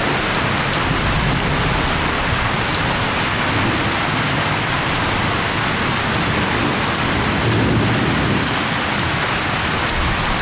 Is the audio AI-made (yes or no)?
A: no